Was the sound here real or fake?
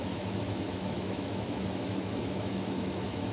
fake